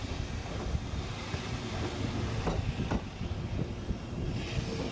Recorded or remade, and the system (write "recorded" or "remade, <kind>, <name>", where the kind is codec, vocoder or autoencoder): recorded